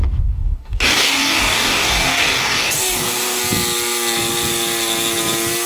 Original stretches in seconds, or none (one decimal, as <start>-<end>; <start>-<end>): 3.4-5.7